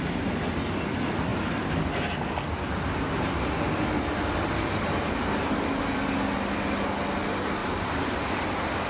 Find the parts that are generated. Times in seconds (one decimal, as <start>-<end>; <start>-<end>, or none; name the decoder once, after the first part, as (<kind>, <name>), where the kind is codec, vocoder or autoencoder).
7.6-8.9 (vocoder, BigVGAN v2)